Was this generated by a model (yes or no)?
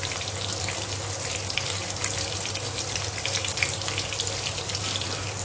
no